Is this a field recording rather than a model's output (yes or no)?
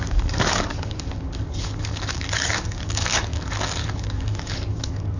no